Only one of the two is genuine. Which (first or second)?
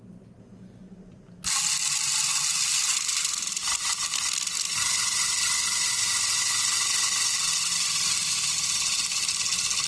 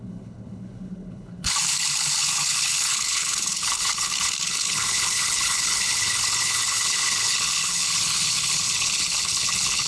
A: first